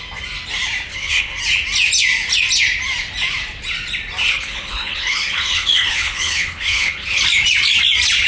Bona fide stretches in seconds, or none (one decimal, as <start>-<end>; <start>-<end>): 0.0-0.9; 1.4-4.3; 7.2-8.3

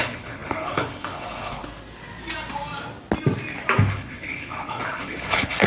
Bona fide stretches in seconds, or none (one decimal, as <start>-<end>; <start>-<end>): 1.6-3.9

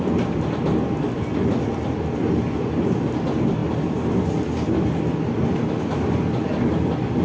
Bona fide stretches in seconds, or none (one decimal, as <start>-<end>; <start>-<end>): 0.0-7.2

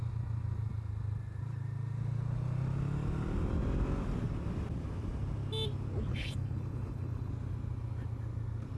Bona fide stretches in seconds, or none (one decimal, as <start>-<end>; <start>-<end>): 0.0-6.1; 7.3-8.8

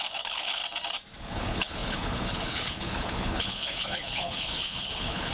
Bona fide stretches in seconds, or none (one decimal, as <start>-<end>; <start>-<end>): 0.6-1.2

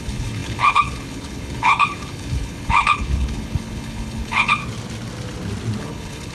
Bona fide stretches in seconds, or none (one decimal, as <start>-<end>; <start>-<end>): 4.6-5.8

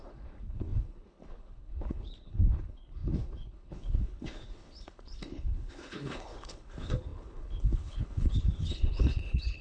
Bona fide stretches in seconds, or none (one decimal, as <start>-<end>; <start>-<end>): none

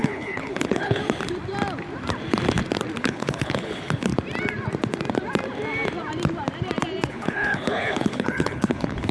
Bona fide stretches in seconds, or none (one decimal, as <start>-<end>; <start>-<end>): 1.0-3.0; 4.1-7.1